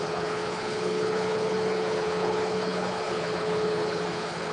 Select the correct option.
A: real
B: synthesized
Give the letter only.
B